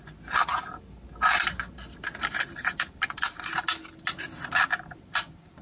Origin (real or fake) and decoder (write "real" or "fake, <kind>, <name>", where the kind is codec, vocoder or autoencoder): real